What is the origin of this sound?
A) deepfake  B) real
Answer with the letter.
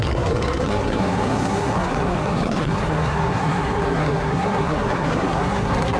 A